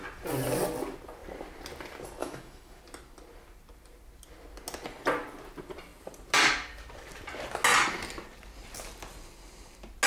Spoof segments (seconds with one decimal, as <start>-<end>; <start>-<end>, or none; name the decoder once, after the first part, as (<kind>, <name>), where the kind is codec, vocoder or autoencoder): 2.2-2.8 (autoencoder, DAC-VAE)